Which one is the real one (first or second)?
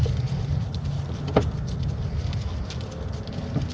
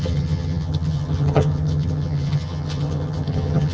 first